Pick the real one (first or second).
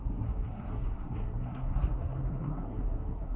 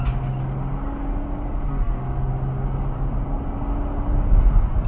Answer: second